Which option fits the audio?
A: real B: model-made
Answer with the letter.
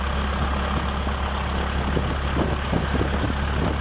A